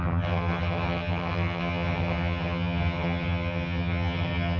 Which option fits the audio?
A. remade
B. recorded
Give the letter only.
A